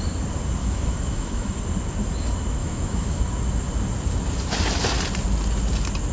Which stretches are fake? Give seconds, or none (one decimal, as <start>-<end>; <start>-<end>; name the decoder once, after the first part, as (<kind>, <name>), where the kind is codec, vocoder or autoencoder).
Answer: 0.6-1.6 (autoencoder, DAC-VAE); 2.6-3.2